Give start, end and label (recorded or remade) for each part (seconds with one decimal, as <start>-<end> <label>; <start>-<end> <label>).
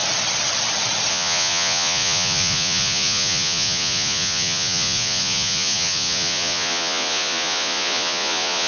0.0-1.1 recorded; 1.1-8.7 remade